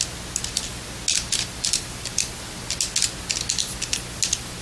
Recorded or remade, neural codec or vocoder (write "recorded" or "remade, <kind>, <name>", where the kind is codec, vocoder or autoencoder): recorded